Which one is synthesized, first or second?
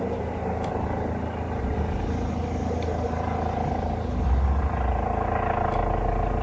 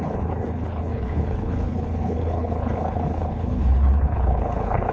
second